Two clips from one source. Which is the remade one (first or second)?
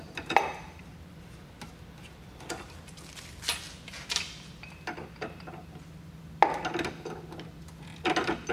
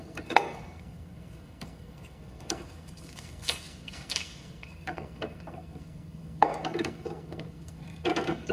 second